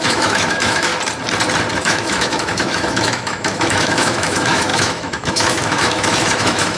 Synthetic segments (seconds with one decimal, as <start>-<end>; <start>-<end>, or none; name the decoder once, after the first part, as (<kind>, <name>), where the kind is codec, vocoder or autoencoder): 0.0-0.9 (autoencoder, DAC-VAE); 1.8-6.8